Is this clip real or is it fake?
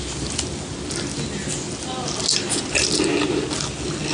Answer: real